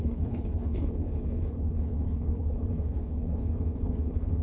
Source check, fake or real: fake